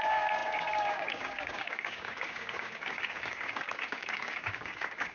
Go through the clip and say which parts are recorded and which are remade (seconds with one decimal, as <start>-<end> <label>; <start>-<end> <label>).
0.0-5.1 remade